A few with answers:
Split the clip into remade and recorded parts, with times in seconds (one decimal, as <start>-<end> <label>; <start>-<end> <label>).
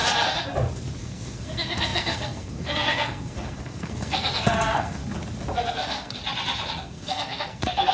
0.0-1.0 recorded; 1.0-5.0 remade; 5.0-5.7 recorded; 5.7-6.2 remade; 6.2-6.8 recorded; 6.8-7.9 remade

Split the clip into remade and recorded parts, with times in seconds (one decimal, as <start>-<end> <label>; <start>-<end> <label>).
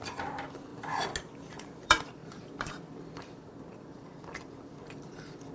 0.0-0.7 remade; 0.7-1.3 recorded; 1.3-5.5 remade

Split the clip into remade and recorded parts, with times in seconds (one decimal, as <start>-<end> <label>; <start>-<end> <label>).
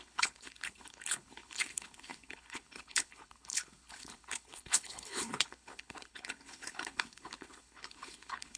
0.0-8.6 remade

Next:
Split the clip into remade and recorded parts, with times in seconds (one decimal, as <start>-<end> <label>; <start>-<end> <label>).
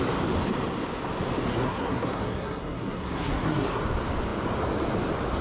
0.0-1.5 recorded; 1.5-3.8 remade; 3.8-5.4 recorded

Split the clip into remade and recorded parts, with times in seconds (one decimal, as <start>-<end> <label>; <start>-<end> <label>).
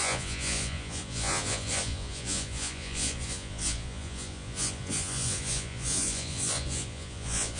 0.0-7.6 remade